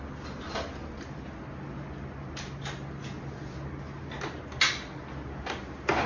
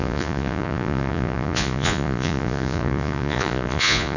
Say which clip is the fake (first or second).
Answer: second